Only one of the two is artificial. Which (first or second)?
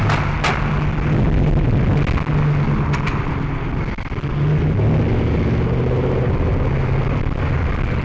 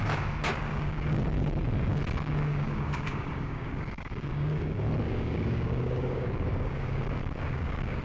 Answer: second